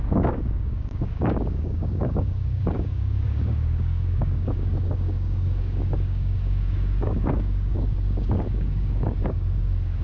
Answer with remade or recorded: remade